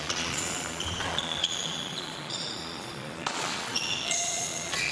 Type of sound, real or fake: fake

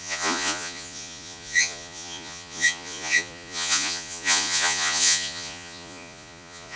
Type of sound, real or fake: fake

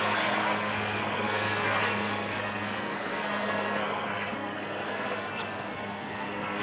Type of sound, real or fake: fake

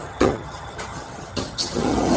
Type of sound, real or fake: fake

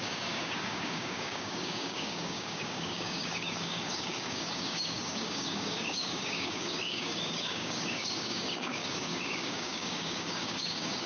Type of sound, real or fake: fake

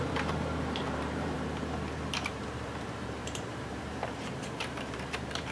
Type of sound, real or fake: fake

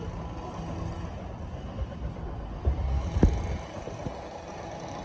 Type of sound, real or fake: real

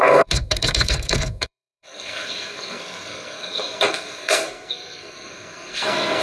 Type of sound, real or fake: fake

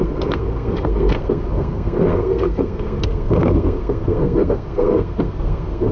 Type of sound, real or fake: fake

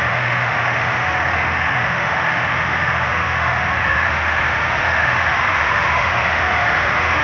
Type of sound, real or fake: fake